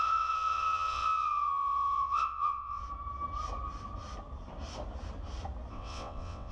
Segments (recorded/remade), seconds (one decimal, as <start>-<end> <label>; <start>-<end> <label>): 0.0-2.8 remade; 2.8-5.7 recorded; 5.7-6.5 remade